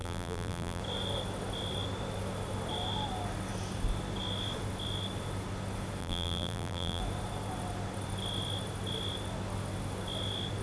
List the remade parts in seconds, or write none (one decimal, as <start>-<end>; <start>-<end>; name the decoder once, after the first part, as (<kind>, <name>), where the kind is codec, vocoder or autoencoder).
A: 0.0-0.8 (vocoder, BigVGAN v2); 6.0-7.0